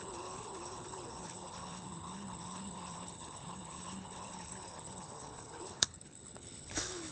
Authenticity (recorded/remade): remade